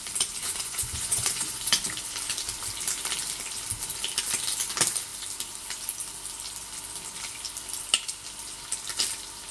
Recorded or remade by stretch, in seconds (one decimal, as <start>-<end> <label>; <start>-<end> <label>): 0.0-0.4 recorded; 0.4-1.8 remade; 1.8-9.5 recorded